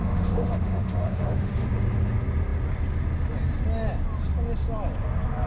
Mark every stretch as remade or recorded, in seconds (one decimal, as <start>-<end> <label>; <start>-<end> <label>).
0.0-1.7 remade; 1.7-5.5 recorded